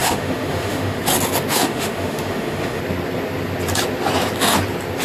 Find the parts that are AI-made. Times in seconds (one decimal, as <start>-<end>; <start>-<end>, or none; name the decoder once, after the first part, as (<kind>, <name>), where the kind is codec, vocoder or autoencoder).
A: 0.0-1.0 (autoencoder, DAC-VAE); 1.5-2.8